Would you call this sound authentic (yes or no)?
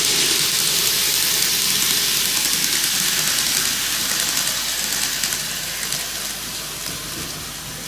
yes